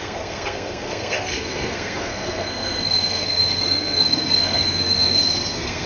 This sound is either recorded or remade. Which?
remade